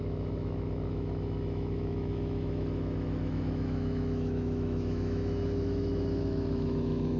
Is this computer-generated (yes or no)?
yes